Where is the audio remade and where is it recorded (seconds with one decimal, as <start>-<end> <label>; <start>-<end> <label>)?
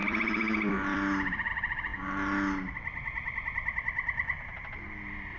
0.0-1.5 remade; 1.5-5.4 recorded